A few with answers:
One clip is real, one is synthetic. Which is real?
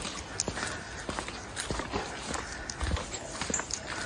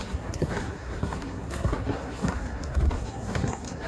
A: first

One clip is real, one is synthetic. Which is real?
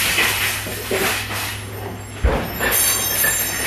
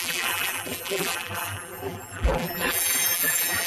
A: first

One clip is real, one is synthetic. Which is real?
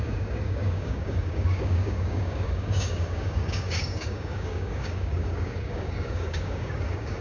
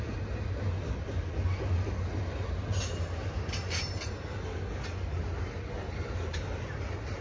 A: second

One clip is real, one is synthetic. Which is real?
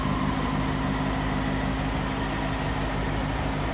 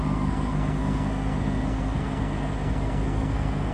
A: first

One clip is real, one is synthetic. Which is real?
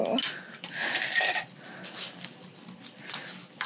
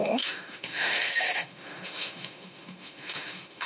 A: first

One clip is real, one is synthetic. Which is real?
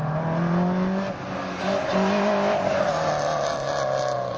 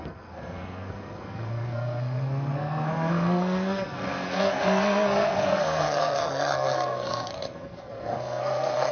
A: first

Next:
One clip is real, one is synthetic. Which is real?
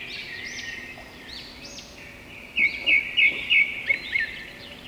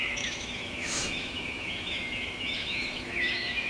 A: first